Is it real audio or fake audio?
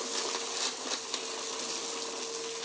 real